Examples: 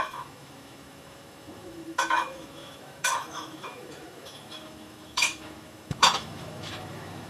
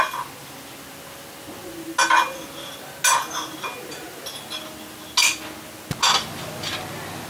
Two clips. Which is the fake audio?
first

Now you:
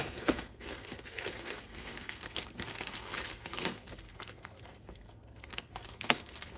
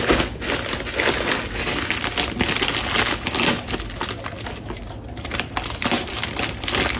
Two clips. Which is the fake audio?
first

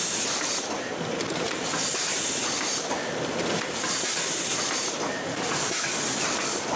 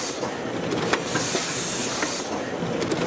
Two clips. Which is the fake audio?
first